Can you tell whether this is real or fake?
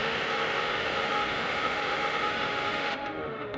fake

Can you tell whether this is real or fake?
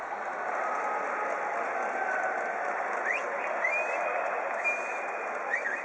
real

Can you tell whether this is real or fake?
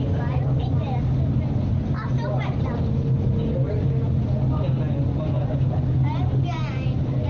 real